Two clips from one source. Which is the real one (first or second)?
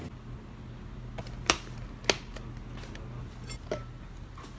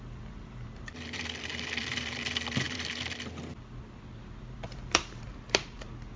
first